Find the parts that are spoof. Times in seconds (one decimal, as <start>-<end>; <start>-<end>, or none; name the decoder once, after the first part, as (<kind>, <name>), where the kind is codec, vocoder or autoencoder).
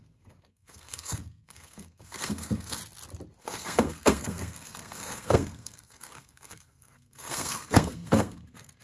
0.0-2.8 (codec, SNAC); 3.4-8.8